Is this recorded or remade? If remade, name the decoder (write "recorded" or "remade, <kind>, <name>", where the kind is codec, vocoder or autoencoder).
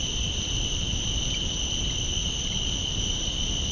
recorded